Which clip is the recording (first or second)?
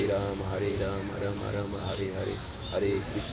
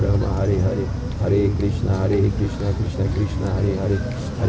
second